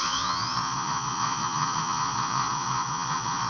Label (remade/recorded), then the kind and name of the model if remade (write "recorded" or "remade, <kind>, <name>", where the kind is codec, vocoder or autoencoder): remade, vocoder, Vocos